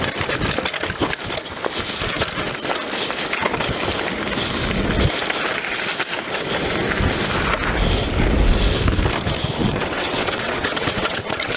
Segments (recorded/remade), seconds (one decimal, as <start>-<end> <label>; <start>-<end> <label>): 0.0-9.6 recorded; 9.6-11.6 remade